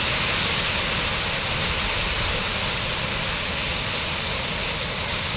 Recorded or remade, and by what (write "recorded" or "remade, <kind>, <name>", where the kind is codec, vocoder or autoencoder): recorded